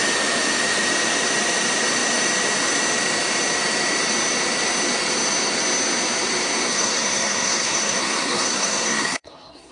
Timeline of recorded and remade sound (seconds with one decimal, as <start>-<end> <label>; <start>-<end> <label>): 0.0-6.7 recorded; 6.7-9.7 remade